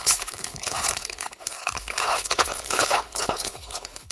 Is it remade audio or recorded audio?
remade